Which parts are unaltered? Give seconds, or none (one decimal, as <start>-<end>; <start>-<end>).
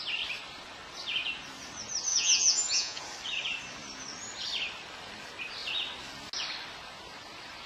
0.0-2.1; 3.0-7.7